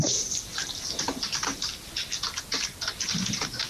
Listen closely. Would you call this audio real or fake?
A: real